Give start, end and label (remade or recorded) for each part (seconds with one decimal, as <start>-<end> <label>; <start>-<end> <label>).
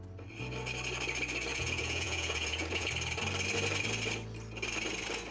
0.0-1.5 recorded; 1.5-2.9 remade; 2.9-5.3 recorded